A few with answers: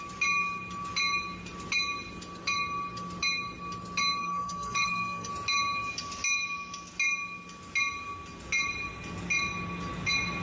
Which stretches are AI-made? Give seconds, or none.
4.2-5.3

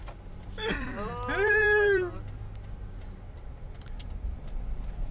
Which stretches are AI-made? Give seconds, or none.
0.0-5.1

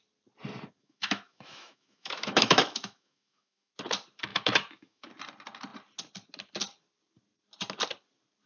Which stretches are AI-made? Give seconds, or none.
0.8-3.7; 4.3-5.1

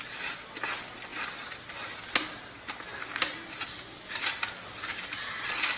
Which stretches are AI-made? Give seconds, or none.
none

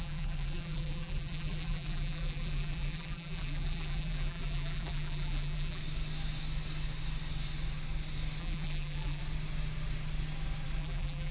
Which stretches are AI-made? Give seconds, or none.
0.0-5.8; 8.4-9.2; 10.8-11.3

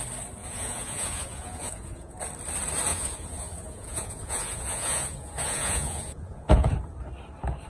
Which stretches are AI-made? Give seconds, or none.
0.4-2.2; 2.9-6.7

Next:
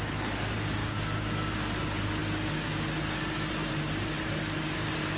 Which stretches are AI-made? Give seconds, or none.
0.8-1.5